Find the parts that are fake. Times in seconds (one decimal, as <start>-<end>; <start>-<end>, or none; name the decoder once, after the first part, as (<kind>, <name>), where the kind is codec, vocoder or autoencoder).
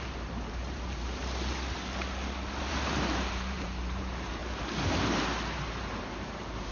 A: 0.0-1.2 (vocoder, BigVGAN v2); 2.6-4.4; 4.9-6.7